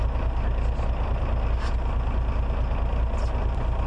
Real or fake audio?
real